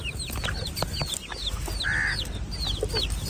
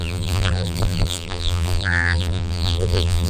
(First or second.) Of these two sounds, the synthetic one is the second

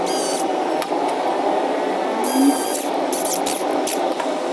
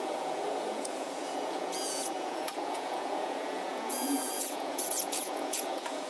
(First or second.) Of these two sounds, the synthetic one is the second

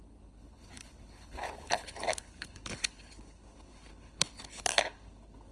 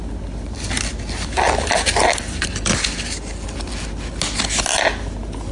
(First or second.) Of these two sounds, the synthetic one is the first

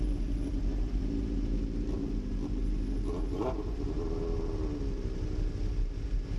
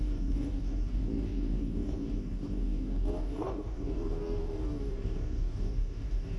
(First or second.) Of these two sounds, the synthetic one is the second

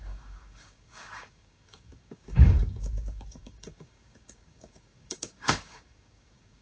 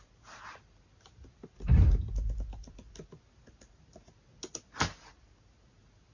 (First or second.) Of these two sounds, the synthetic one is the first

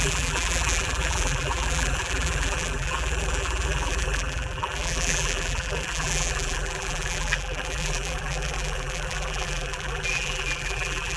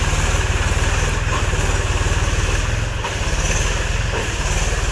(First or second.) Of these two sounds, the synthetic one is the first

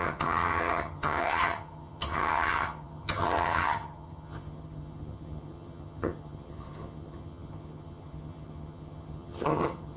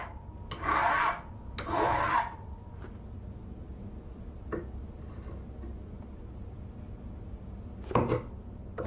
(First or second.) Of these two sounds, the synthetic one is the first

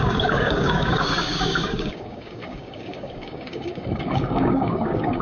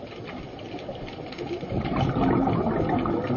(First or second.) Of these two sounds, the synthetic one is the first